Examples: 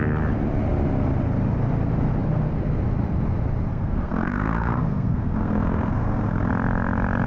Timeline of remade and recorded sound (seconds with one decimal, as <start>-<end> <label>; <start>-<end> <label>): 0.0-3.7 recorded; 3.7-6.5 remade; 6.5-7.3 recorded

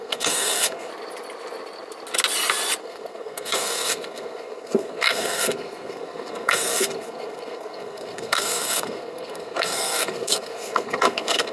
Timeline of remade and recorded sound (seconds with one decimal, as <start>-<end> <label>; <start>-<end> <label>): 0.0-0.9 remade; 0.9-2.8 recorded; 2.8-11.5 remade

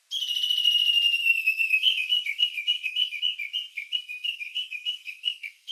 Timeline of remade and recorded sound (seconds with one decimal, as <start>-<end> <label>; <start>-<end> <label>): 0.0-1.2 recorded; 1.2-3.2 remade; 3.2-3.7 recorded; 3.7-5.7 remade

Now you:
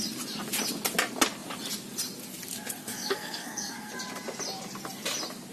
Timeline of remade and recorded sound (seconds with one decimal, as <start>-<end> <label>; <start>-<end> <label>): 0.0-2.8 recorded; 2.8-3.9 remade; 3.9-5.5 recorded

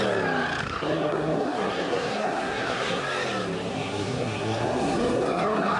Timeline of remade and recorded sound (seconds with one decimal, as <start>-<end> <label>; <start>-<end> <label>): 0.0-0.6 recorded; 0.6-3.0 remade; 3.0-3.7 recorded; 3.7-5.8 remade

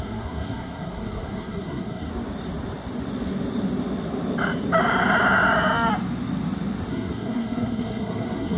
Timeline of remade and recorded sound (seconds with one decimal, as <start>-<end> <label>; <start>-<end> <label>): 0.0-2.1 remade; 2.1-6.9 recorded; 6.9-8.6 remade

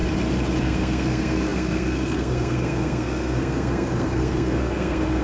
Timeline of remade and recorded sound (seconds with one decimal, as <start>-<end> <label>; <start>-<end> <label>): 0.0-0.6 recorded; 0.6-5.2 remade

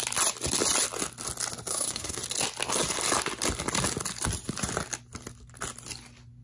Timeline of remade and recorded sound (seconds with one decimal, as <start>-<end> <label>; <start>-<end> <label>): 0.0-1.7 recorded; 1.7-2.2 remade; 2.2-6.4 recorded